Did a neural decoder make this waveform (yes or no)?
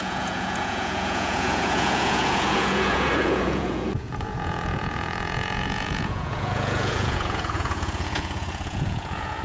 yes